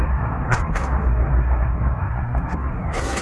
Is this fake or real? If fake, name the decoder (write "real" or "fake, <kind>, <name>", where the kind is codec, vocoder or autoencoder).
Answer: fake, codec, SNAC